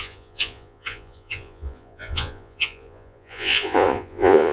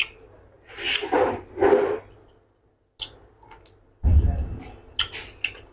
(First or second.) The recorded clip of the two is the second